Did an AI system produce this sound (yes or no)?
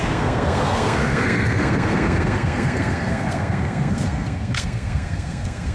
yes